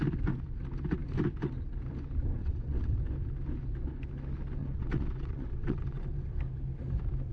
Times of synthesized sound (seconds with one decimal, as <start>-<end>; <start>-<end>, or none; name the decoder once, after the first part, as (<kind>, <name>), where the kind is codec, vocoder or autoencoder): 2.4-3.0 (vocoder, WaveNeXt); 4.6-6.0